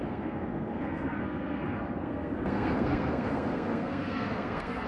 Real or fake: fake